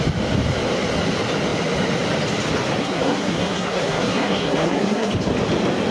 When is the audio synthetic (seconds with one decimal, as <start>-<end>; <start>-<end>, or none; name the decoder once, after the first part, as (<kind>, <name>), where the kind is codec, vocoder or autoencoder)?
2.8-5.1 (codec, SNAC)